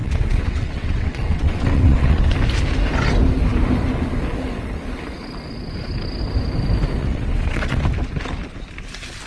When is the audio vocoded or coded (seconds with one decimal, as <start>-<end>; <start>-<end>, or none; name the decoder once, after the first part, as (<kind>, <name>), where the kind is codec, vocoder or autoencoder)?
0.0-2.3 (vocoder, WaveNeXt); 7.0-7.8